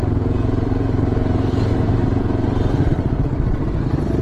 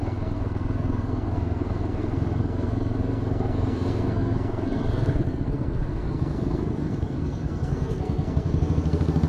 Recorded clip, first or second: first